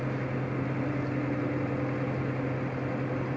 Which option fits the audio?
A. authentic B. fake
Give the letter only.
A